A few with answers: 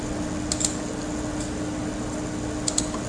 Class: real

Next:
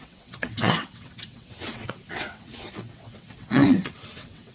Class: fake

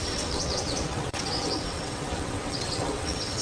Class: fake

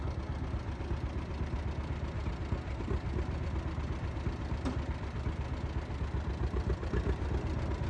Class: real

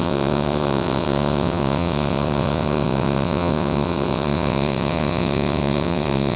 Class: fake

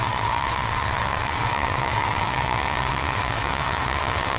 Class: fake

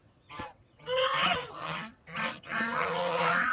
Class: fake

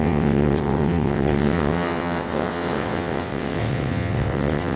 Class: fake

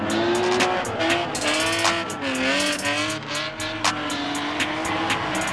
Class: real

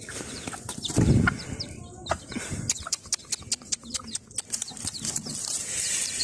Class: real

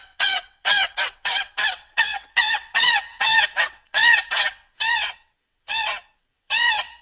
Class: fake